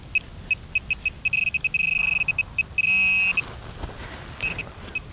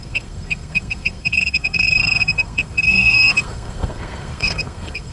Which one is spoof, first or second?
second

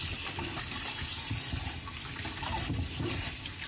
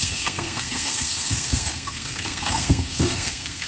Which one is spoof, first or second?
second